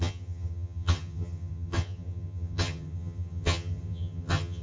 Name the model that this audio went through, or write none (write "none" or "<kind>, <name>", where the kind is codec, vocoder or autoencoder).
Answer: vocoder, HiFi-GAN